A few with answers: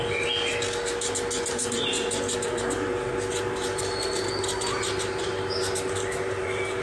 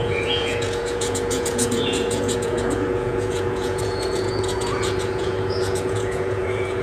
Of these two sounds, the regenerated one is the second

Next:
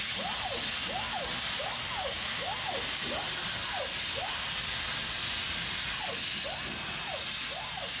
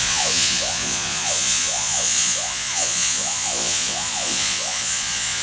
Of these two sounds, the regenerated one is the second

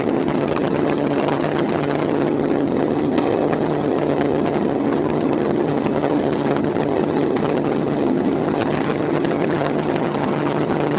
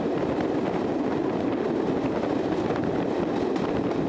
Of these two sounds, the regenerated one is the first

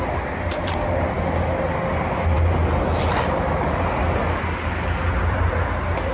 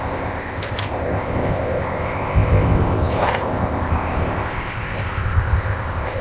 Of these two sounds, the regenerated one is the second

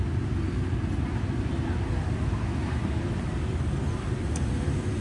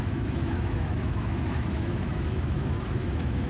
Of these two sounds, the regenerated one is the second